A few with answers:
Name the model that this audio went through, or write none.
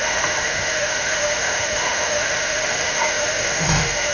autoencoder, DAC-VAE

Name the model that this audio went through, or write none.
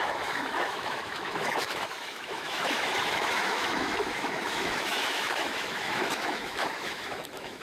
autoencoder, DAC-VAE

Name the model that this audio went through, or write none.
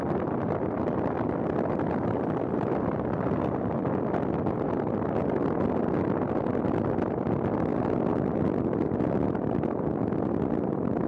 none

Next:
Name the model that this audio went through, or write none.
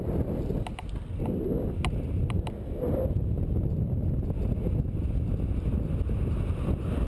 none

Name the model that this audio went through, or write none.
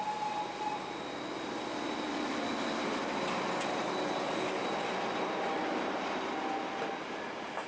none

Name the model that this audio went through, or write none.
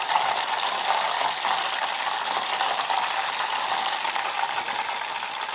none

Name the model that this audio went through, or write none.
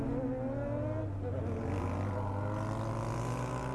none